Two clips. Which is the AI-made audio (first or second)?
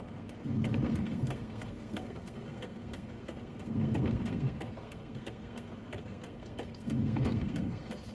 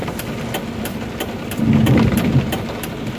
first